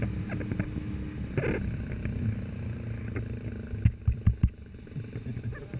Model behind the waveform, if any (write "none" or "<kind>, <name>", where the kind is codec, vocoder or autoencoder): none